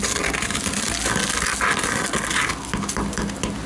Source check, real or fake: real